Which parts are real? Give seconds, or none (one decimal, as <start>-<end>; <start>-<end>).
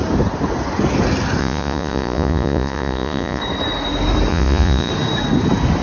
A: 0.0-1.4; 3.4-4.3; 4.9-5.8